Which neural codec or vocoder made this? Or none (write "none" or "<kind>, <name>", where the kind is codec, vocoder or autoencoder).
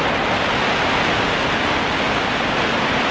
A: none